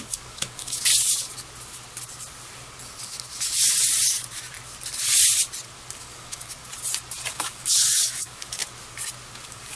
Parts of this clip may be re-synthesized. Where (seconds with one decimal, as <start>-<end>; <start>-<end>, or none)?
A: 0.0-0.9; 6.0-6.7; 7.3-8.6; 9.3-9.8